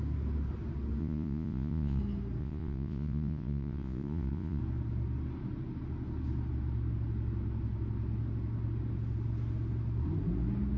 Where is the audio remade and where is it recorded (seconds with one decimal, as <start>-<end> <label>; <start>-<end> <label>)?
0.0-1.0 recorded; 1.0-2.0 remade; 2.0-2.4 recorded; 2.4-4.6 remade; 4.6-10.8 recorded

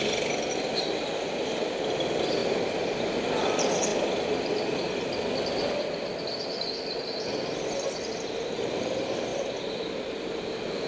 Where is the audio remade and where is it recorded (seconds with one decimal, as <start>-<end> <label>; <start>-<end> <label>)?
0.0-10.9 recorded